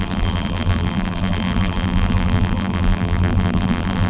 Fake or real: fake